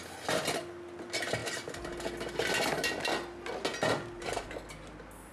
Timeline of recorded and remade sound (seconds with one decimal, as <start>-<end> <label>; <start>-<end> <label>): 0.0-5.3 recorded